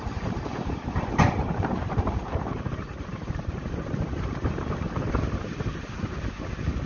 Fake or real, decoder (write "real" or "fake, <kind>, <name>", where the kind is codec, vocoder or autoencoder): fake, vocoder, BigVGAN v2